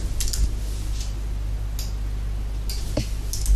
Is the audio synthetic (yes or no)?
no